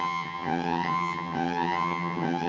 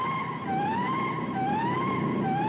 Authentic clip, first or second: second